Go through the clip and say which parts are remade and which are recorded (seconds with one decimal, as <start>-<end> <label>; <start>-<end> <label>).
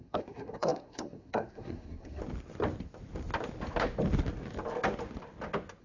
0.0-2.2 remade; 2.2-5.8 recorded